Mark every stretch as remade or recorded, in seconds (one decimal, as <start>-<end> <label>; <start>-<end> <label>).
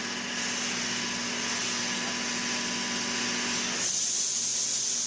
0.0-5.1 recorded